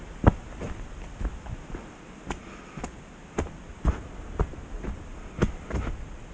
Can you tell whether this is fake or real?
real